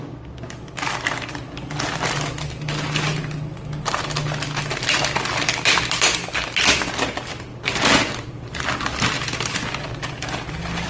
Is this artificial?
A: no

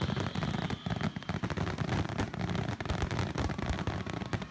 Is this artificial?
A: no